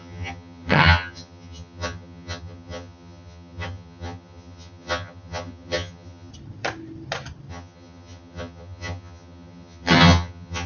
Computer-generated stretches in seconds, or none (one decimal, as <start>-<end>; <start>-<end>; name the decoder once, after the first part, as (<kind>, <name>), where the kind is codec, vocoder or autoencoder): 0.0-6.3 (vocoder, HiFi-GAN); 7.5-10.7